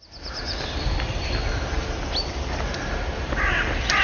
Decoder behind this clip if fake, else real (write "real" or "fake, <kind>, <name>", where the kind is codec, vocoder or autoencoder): real